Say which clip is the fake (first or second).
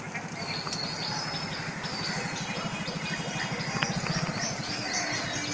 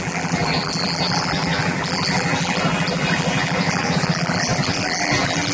second